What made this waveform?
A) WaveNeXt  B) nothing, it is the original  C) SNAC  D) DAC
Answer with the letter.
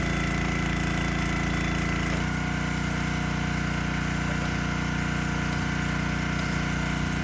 B